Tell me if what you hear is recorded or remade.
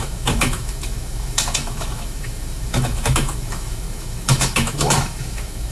remade